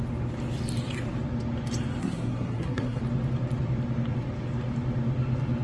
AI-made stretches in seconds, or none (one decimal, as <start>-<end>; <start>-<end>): 2.0-3.0

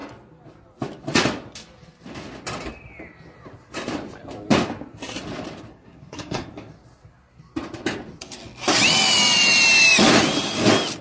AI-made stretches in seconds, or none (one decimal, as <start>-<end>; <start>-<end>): 5.7-6.5